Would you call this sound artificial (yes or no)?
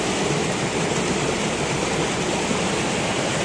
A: no